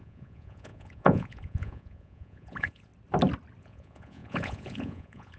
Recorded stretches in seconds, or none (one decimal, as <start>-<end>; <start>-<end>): 2.9-3.6